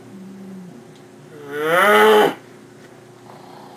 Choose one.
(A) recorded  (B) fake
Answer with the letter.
A